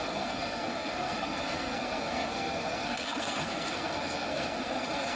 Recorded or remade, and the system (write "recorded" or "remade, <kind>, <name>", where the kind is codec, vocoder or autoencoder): remade, codec, SNAC